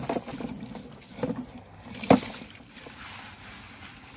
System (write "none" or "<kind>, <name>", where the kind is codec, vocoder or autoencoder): none